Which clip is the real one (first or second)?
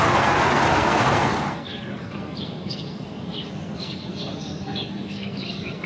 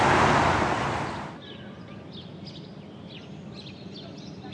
second